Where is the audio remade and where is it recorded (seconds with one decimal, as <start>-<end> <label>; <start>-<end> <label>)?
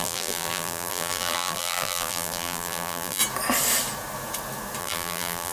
0.0-3.2 remade; 3.2-4.8 recorded; 4.8-5.5 remade